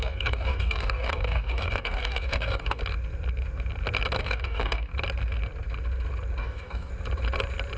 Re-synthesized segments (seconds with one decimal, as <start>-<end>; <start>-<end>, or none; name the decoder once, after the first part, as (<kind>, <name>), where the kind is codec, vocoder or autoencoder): 0.0-2.8 (codec, DAC); 4.2-4.9; 6.4-6.9